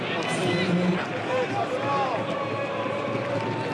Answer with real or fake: real